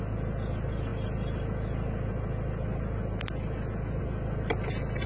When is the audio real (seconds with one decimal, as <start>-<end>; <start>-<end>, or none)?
0.0-5.1